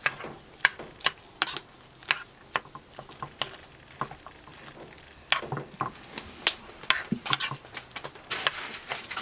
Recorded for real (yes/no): yes